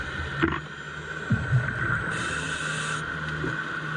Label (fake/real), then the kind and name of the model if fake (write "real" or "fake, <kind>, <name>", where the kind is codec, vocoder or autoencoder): real